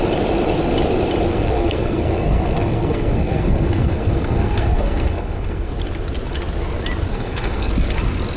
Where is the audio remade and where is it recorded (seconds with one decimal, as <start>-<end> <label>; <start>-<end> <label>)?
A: 0.0-1.3 recorded; 1.3-5.7 remade; 5.7-7.1 recorded; 7.1-7.7 remade; 7.7-8.4 recorded